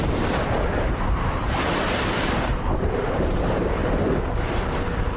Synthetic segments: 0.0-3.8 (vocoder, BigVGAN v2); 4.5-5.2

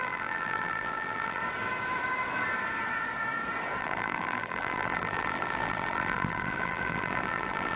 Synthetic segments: 0.0-1.4 (vocoder, BigVGAN v2); 3.8-7.8

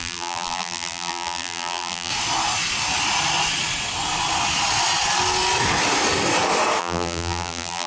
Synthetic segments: 0.0-2.1 (vocoder, BigVGAN v2); 6.8-7.9

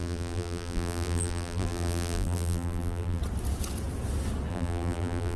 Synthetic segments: 0.0-3.2 (vocoder, BigVGAN v2); 4.5-5.4